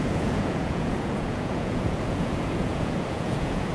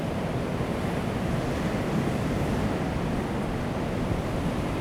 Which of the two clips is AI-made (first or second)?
first